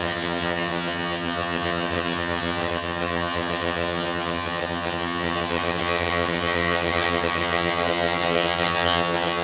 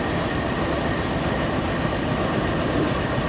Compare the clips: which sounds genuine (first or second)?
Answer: second